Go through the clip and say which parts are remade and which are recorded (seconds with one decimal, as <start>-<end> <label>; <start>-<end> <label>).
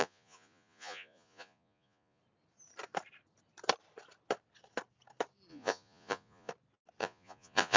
0.0-2.2 remade; 2.2-5.5 recorded; 5.5-6.5 remade; 6.5-7.0 recorded; 7.0-7.8 remade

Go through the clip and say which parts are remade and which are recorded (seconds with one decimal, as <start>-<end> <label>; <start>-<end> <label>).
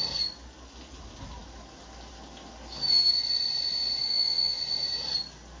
0.0-4.1 recorded; 4.1-4.6 remade; 4.6-5.6 recorded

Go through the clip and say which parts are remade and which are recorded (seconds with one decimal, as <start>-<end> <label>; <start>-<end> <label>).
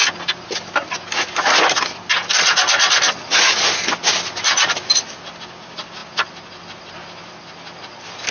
0.0-8.3 recorded